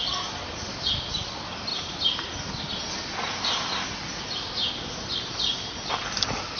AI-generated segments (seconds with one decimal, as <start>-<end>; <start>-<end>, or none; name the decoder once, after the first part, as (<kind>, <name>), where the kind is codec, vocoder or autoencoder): none